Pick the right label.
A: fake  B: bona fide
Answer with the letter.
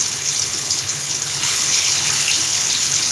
A